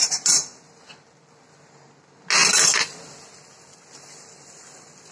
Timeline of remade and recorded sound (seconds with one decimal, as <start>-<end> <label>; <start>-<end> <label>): 0.0-5.1 recorded